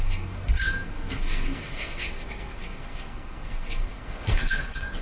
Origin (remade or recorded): remade